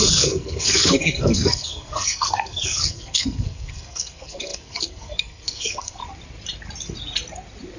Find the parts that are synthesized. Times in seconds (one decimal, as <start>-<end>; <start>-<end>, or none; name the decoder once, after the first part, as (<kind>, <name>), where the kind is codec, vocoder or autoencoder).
0.0-6.0 (codec, SNAC)